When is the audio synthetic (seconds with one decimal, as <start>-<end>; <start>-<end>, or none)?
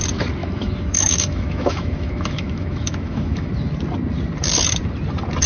0.4-3.5